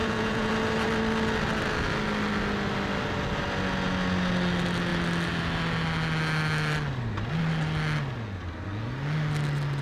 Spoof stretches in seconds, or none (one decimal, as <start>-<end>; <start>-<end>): 0.0-0.5